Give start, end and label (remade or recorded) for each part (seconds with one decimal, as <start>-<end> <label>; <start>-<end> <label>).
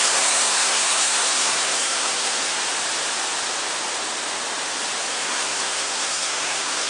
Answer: 0.0-2.6 remade; 2.6-5.1 recorded; 5.1-6.9 remade